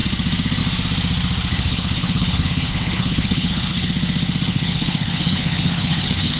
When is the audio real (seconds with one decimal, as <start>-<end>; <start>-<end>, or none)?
0.0-1.5; 3.9-4.5